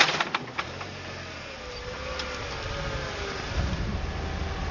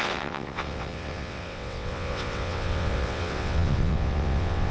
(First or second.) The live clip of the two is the first